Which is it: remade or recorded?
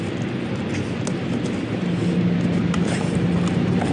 recorded